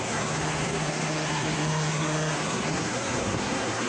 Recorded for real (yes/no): no